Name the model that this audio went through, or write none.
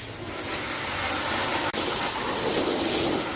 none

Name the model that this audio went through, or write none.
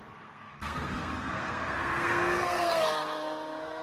codec, SNAC